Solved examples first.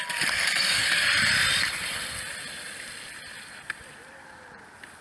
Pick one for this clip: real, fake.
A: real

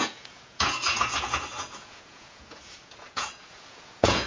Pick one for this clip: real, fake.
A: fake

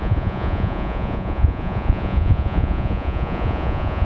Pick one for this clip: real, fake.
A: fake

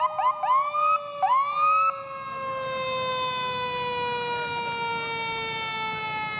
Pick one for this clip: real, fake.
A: real